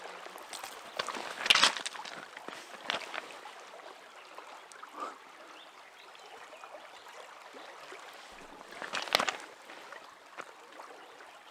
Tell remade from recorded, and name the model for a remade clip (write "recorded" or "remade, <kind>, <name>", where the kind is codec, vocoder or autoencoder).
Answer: recorded